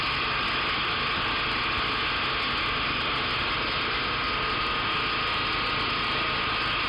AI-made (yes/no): no